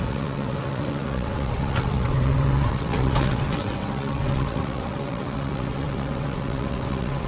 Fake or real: fake